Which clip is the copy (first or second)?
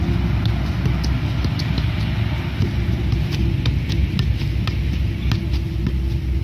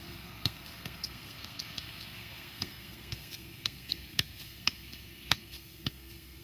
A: second